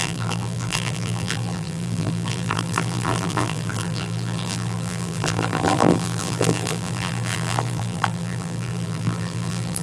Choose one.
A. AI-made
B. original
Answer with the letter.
A